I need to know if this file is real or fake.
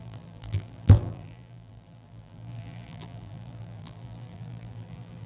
fake